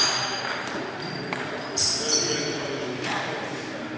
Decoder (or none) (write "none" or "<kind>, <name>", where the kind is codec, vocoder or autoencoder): none